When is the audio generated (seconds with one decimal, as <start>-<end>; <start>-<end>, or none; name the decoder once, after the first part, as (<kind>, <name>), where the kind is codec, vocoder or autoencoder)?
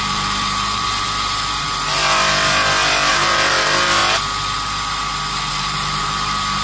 0.0-2.0 (vocoder, BigVGAN v2); 3.1-4.0; 5.5-6.6